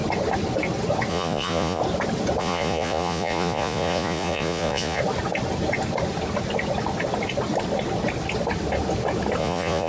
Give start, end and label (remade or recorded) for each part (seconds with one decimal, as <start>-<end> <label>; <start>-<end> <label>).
0.0-1.1 recorded; 1.1-1.8 remade; 1.8-2.4 recorded; 2.4-5.0 remade; 5.0-9.4 recorded; 9.4-9.9 remade